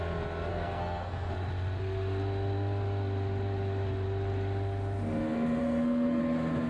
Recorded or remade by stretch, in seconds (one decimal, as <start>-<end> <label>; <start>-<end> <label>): 0.0-0.5 recorded; 0.5-1.3 remade; 1.3-5.6 recorded; 5.6-6.2 remade; 6.2-6.7 recorded